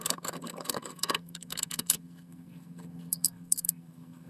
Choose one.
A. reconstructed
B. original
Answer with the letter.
A